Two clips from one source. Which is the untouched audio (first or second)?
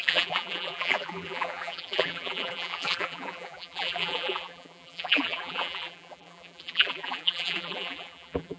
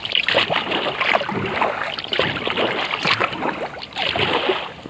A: second